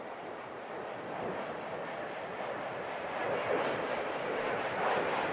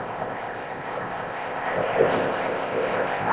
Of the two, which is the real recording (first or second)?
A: first